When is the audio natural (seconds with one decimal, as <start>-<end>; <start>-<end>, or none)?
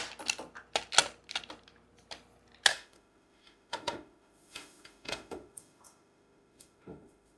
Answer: 0.0-2.7